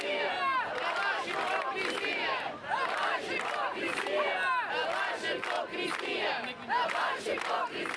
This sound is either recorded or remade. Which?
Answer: recorded